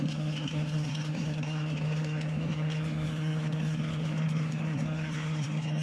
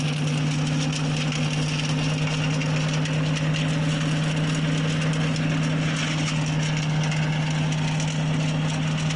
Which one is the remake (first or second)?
first